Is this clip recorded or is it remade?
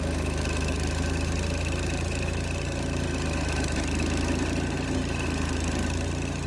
recorded